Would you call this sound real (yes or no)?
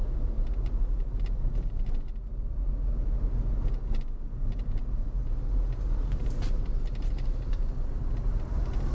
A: yes